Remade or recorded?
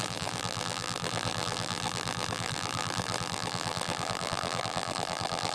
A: remade